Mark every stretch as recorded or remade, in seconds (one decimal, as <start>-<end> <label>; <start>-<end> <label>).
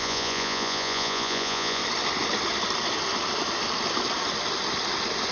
0.0-1.8 remade; 1.8-5.3 recorded